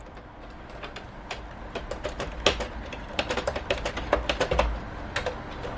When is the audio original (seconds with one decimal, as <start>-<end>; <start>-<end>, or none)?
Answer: 0.0-0.4; 3.9-5.8